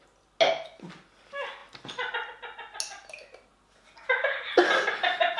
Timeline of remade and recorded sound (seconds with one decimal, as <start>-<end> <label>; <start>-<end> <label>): 0.0-5.4 recorded